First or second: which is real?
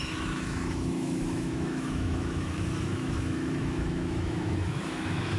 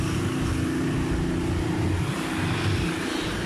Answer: second